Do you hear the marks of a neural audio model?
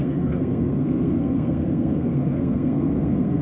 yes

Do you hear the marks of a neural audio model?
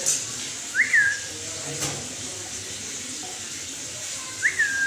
no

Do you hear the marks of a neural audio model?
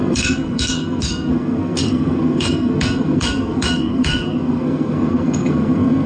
yes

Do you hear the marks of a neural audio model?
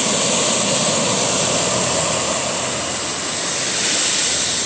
no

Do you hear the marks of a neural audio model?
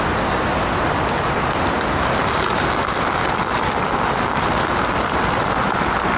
no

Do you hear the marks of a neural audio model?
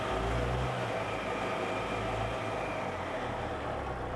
no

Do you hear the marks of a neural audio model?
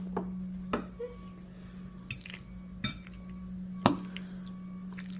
no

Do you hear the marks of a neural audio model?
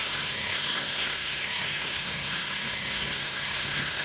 yes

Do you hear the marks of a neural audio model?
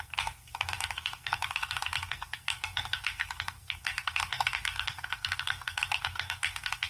yes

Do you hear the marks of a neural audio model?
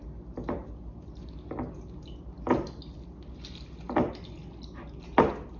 no